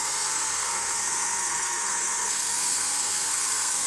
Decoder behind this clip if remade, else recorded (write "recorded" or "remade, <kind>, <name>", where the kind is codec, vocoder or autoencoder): remade, codec, SNAC